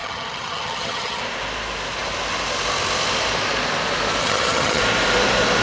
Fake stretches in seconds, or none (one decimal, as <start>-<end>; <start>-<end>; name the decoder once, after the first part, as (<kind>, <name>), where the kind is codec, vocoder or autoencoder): 0.0-1.2 (vocoder, HiFi-GAN); 4.2-4.8